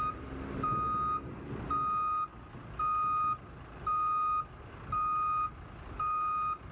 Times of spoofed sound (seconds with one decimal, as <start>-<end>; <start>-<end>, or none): none